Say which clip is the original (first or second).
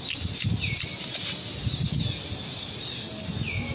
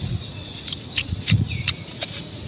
first